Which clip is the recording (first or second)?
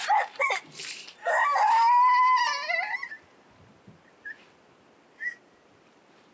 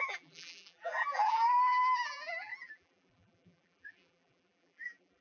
first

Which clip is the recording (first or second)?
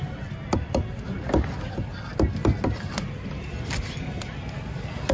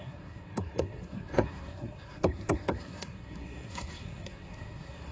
first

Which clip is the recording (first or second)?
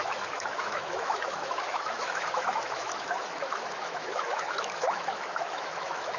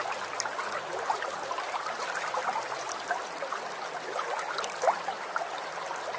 second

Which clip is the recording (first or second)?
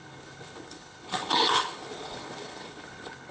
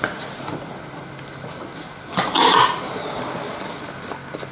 second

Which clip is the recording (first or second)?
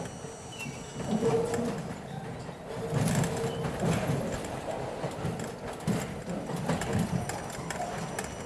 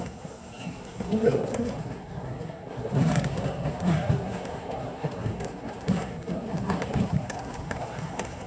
first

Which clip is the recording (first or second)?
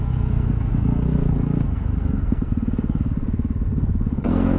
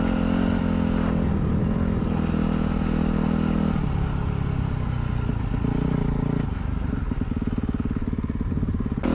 second